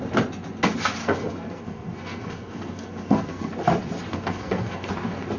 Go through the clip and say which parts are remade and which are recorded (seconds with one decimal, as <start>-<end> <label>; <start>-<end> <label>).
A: 0.0-1.0 recorded; 1.0-3.5 remade; 3.5-4.1 recorded; 4.1-4.9 remade; 4.9-5.4 recorded